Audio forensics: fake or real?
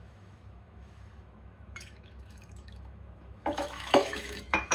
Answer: fake